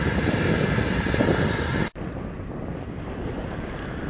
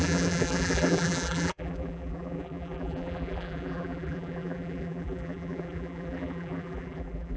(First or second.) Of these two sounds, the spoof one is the second